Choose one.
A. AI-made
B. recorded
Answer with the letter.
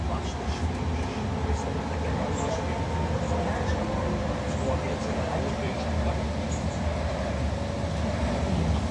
B